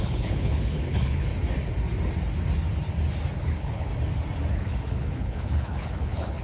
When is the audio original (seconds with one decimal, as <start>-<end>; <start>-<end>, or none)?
1.3-3.4; 3.9-4.5